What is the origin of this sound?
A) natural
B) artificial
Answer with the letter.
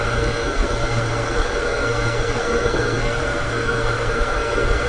B